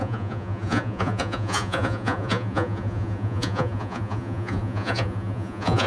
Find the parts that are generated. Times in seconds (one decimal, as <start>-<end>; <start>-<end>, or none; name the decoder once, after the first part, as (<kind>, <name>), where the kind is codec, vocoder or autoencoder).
0.0-5.9 (vocoder, Vocos)